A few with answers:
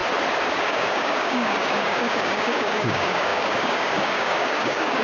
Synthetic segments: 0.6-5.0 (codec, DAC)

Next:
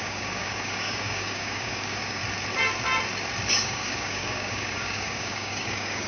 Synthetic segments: 0.0-2.2 (codec, DAC); 3.5-6.1

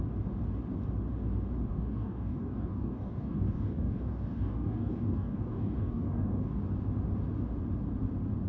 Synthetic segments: 1.7-6.6 (codec, DAC)

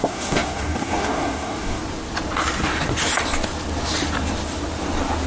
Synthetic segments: 0.0-1.8 (codec, DAC)

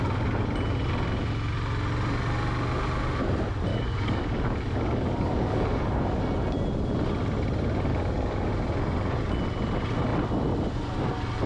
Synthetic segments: 3.7-6.2 (codec, DAC); 7.9-8.5

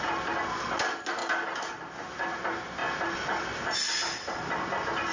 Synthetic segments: none